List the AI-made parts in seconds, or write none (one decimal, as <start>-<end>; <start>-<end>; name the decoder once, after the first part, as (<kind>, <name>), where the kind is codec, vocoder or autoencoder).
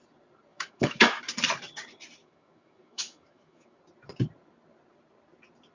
0.5-1.2 (autoencoder, DAC-VAE); 2.2-3.8